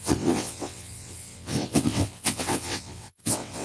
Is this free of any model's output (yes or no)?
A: no